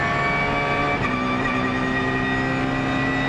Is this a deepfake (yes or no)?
no